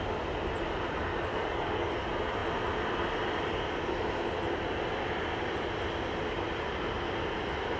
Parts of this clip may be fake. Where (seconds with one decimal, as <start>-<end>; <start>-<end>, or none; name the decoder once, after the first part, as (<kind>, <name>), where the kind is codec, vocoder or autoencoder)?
1.3-1.9 (codec, DAC)